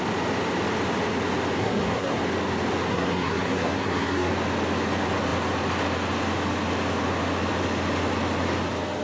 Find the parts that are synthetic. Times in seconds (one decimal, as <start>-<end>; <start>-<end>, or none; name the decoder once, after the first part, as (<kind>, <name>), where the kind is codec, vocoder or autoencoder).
1.6-2.2 (codec, SNAC); 2.9-4.3